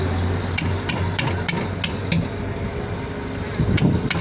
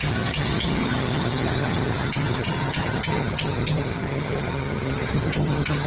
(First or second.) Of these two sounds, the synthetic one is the second